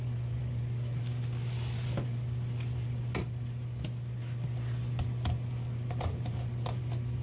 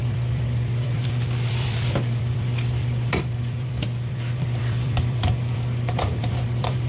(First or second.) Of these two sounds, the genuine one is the first